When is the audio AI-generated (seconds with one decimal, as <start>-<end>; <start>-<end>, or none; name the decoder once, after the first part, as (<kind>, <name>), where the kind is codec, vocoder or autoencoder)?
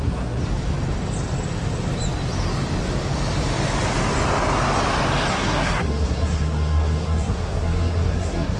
0.0-0.4 (codec, SNAC); 5.3-8.6